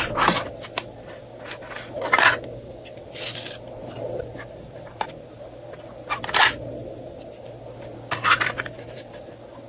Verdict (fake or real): real